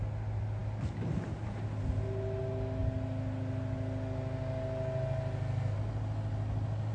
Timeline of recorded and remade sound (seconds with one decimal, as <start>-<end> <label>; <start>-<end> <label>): 0.0-6.9 recorded